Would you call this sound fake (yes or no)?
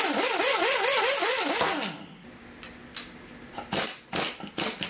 no